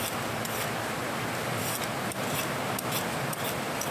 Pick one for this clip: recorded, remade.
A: recorded